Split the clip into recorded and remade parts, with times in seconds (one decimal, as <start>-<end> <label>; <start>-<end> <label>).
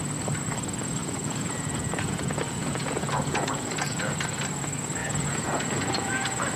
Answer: 0.0-1.0 recorded; 1.0-4.0 remade; 4.0-5.0 recorded; 5.0-6.6 remade